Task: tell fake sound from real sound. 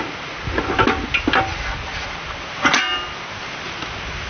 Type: real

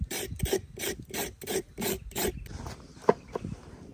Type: real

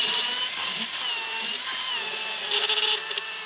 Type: real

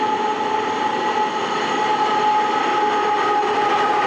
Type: real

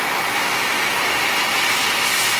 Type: fake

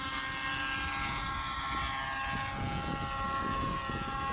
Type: real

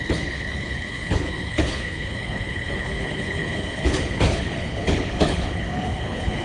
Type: fake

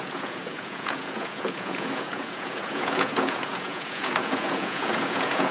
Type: fake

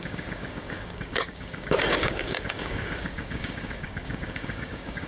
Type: fake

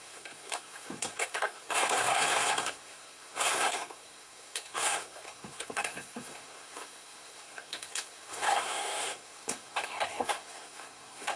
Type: fake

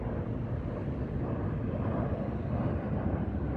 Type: fake